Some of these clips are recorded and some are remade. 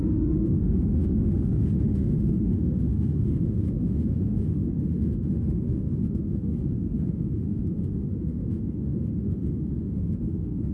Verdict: remade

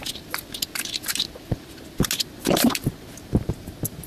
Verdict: recorded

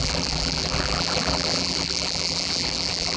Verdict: remade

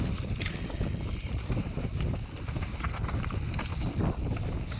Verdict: recorded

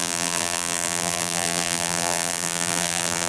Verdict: remade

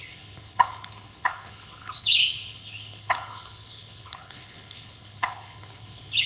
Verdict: remade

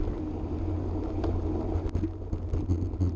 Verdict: recorded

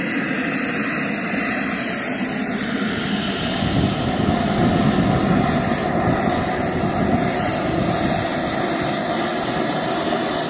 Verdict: recorded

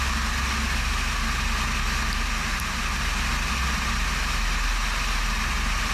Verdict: recorded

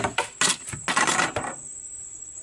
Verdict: recorded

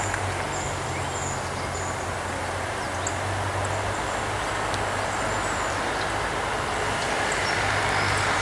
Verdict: recorded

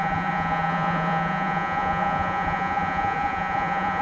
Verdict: remade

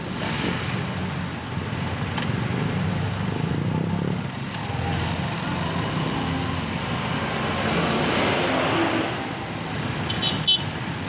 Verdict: recorded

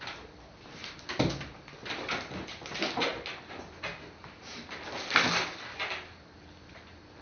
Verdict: recorded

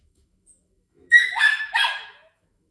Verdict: remade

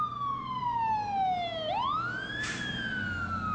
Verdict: recorded